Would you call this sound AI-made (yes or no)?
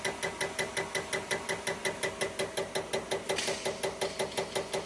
no